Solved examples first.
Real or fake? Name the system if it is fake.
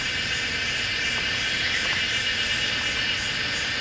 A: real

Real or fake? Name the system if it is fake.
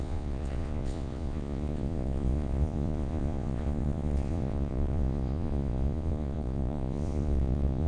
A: fake, vocoder, Vocos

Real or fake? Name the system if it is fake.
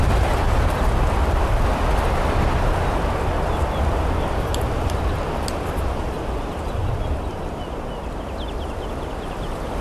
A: real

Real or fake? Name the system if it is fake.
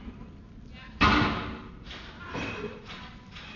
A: real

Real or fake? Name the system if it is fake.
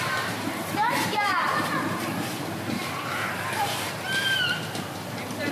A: fake, vocoder, BigVGAN v2